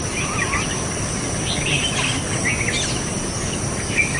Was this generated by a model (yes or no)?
no